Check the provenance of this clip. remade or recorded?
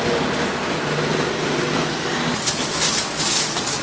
recorded